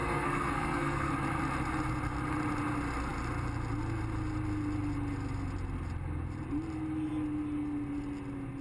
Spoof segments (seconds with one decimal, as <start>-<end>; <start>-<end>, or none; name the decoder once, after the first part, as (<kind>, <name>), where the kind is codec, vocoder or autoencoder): 0.0-1.1 (codec, SNAC)